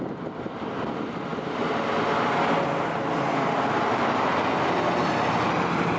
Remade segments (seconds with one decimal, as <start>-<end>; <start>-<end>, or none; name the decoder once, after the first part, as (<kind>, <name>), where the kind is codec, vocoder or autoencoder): none